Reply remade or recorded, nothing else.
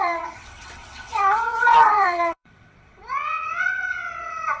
remade